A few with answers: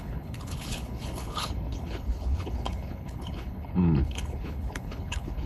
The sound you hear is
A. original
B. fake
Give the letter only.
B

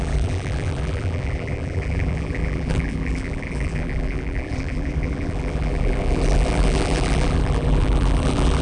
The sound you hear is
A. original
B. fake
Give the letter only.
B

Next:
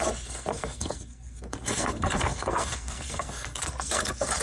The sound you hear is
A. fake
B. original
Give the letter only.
A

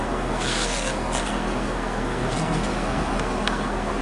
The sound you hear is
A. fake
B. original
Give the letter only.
A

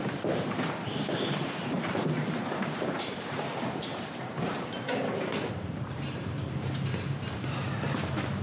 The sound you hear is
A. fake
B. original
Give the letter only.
A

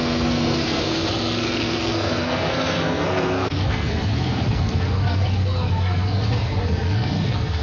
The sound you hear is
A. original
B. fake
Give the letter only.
B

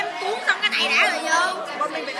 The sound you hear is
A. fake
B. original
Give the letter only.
B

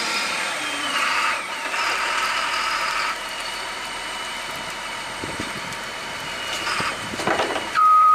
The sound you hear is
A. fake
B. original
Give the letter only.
A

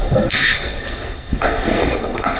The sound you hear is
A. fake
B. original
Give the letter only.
A